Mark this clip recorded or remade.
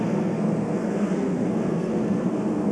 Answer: remade